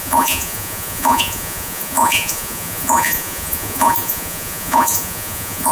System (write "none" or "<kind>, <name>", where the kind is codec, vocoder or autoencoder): vocoder, Vocos